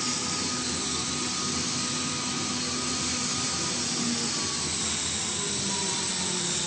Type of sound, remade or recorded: recorded